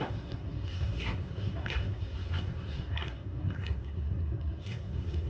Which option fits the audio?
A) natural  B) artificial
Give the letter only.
B